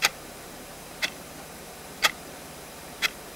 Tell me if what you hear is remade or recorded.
remade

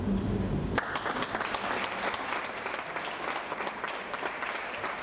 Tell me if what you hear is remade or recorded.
recorded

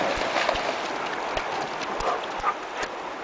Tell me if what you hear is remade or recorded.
recorded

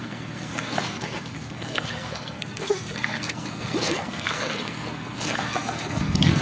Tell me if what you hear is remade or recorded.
remade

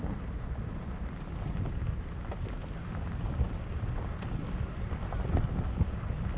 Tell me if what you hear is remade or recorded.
recorded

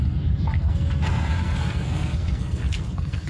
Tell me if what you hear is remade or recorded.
remade